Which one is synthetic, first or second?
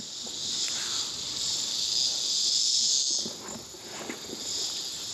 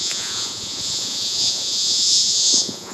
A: second